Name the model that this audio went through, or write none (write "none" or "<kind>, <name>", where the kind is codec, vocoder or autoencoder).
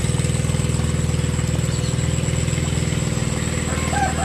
none